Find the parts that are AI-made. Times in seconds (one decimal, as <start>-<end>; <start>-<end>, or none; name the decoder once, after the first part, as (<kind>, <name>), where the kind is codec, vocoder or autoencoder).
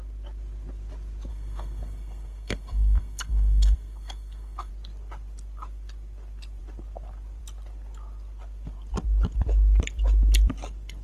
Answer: 1.3-4.7 (codec, SNAC)